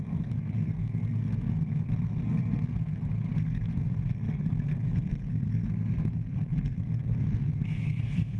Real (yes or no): no